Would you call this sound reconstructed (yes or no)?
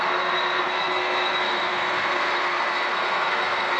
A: yes